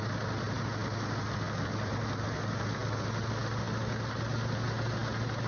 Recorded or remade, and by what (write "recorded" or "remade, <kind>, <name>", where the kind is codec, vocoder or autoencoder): recorded